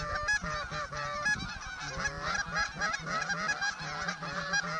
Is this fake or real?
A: real